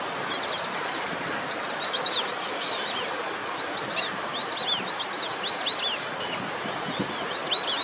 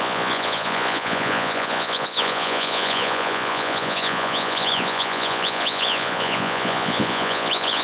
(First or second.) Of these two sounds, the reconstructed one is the second